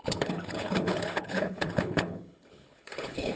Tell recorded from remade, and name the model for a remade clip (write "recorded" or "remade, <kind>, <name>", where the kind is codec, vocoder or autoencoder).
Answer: remade, codec, HILCodec